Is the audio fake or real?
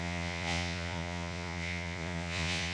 fake